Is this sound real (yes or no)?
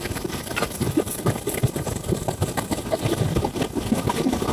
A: yes